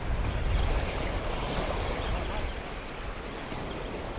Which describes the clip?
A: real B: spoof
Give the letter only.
A